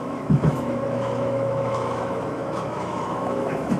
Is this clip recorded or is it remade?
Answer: remade